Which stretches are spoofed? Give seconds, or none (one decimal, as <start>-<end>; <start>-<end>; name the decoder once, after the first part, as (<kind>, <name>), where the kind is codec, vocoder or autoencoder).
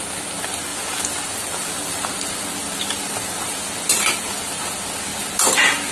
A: none